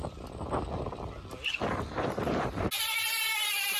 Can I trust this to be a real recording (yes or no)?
yes